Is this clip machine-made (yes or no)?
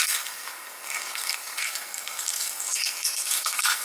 yes